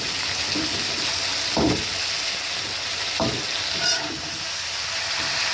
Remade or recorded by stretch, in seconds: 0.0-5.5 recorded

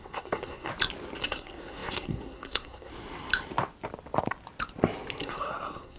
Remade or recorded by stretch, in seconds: 0.0-0.7 remade; 0.7-1.2 recorded; 1.2-2.9 remade; 2.9-5.2 recorded; 5.2-6.0 remade

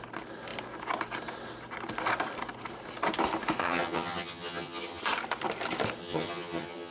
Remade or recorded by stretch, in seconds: 0.0-3.6 recorded; 3.6-5.0 remade; 5.0-6.0 recorded; 6.0-6.9 remade

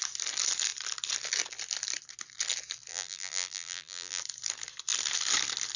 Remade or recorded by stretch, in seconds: 0.0-2.9 recorded; 2.9-4.2 remade; 4.2-5.8 recorded

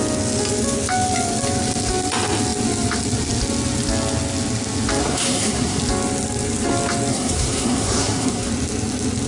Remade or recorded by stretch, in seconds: 0.0-5.0 recorded; 5.0-5.8 remade; 5.8-7.1 recorded; 7.1-8.5 remade; 8.5-9.3 recorded

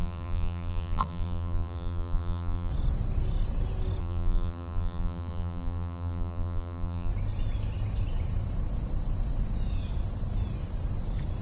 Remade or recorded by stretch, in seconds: 0.0-2.7 remade; 2.7-4.0 recorded; 4.0-7.1 remade; 7.1-11.4 recorded

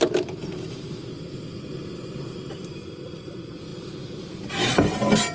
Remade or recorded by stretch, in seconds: 0.0-5.3 recorded

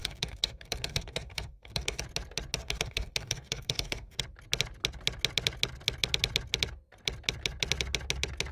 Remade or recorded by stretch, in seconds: 0.0-2.0 remade; 2.0-2.6 recorded; 2.6-4.2 remade; 4.2-8.5 recorded